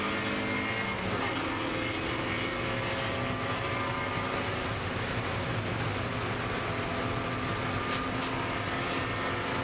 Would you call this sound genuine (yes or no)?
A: yes